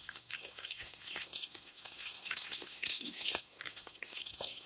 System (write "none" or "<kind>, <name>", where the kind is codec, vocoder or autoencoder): codec, SNAC